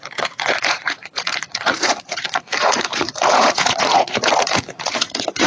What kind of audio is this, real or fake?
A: fake